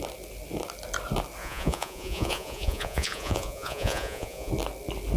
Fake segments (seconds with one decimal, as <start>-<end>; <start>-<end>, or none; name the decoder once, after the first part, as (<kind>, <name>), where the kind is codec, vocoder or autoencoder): 1.4-4.5 (vocoder, Vocos)